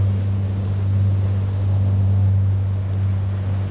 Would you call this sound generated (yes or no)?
no